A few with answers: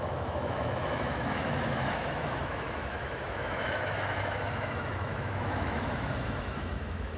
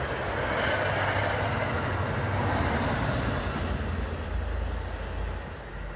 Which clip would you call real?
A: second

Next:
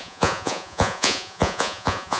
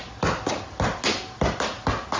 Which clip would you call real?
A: second